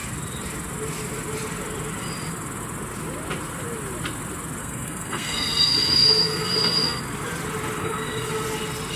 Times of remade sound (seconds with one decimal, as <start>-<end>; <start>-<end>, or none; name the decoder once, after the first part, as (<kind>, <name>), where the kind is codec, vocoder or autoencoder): 4.6-7.0 (codec, SNAC); 7.8-8.3

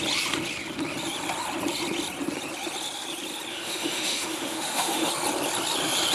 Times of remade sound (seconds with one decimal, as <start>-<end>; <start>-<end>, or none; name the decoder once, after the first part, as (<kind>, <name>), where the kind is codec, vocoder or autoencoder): 3.5-5.1 (autoencoder, DAC-VAE)

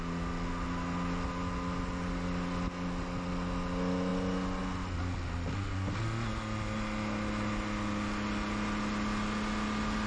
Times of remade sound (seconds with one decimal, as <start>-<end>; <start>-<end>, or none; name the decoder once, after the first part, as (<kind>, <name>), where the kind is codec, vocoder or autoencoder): none

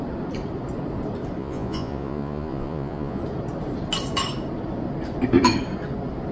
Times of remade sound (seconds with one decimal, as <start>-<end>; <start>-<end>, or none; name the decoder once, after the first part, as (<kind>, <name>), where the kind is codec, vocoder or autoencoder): 1.4-3.2 (vocoder, Vocos)